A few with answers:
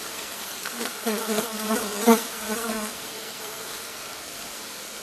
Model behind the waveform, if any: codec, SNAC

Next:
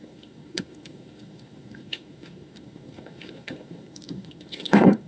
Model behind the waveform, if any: codec, SNAC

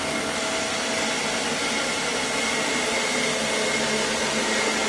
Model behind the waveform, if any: none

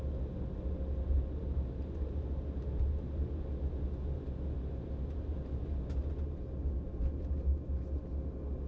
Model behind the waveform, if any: none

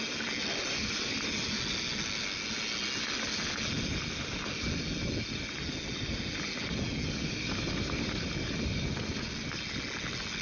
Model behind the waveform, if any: none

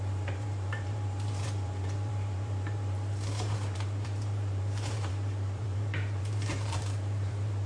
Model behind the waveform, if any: vocoder, BigVGAN v2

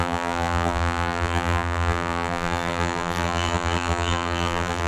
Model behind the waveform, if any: vocoder, BigVGAN v2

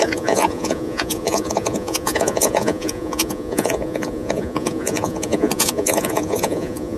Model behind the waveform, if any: vocoder, Vocos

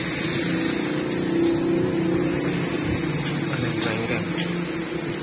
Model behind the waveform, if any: none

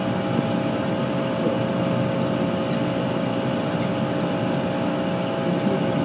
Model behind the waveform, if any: none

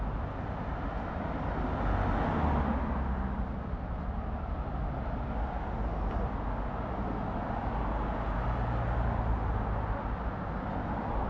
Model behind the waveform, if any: none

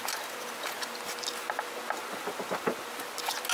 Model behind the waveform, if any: none